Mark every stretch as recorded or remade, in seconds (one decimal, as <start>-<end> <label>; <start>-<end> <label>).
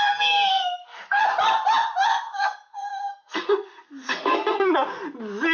0.0-0.5 recorded; 0.5-1.2 remade; 1.2-2.1 recorded; 2.1-4.7 remade; 4.7-5.5 recorded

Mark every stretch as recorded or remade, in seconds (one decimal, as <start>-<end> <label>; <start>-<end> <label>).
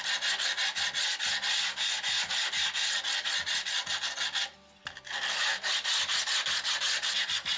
0.0-7.6 recorded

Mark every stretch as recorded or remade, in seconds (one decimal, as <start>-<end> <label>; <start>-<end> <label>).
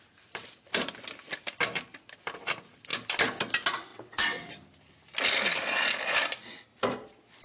0.0-3.9 recorded; 3.9-4.5 remade; 4.5-7.4 recorded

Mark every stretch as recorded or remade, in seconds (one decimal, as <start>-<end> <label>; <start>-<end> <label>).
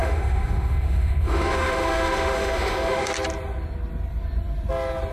0.0-3.1 remade; 3.1-5.1 recorded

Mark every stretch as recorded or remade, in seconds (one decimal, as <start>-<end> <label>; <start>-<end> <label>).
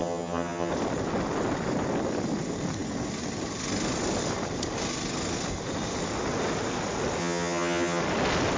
0.0-0.7 remade; 0.7-7.2 recorded; 7.2-8.0 remade; 8.0-8.6 recorded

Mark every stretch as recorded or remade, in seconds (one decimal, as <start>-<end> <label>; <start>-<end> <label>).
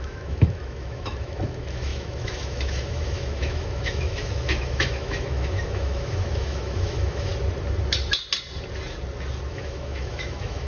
0.0-7.3 remade; 7.3-9.5 recorded; 9.5-10.7 remade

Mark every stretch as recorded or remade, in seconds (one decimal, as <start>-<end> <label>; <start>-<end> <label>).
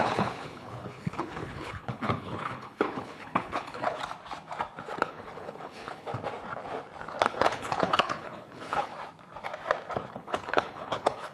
0.0-4.0 remade; 4.0-5.0 recorded; 5.0-6.1 remade; 6.1-7.3 recorded; 7.3-8.9 remade; 8.9-10.1 recorded; 10.1-11.3 remade